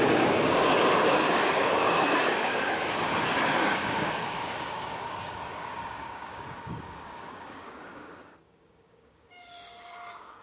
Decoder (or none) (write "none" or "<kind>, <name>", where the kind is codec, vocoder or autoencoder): codec, DAC